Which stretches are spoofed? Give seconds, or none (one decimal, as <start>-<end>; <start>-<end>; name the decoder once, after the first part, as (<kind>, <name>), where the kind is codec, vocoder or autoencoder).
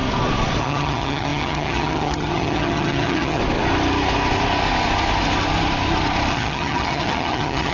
0.6-3.4 (vocoder, HiFi-GAN); 6.3-7.7